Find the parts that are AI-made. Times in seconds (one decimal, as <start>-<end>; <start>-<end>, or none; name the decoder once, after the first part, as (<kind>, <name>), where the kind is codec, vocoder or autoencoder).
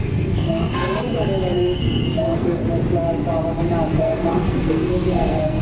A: 0.0-2.6 (codec, SNAC); 3.9-5.6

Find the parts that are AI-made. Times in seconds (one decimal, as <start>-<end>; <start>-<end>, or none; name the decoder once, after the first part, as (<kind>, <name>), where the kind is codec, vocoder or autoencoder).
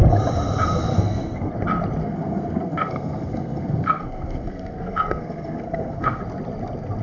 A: 0.9-1.5 (codec, SNAC); 2.0-6.2